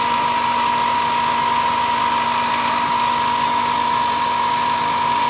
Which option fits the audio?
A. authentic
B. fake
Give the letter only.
A